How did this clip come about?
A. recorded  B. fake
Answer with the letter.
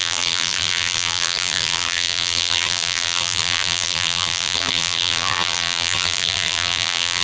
B